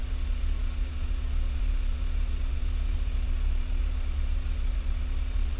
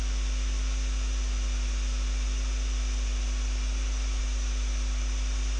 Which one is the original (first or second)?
second